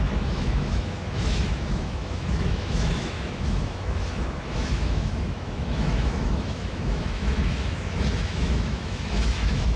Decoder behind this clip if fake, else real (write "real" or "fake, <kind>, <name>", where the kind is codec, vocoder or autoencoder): fake, autoencoder, DAC-VAE